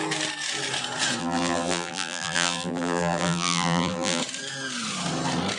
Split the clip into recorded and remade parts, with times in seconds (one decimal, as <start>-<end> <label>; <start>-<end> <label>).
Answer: 0.0-1.2 recorded; 1.2-4.2 remade; 4.2-5.6 recorded